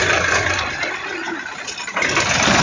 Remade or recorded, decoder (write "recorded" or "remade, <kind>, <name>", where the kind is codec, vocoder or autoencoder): remade, vocoder, BigVGAN v2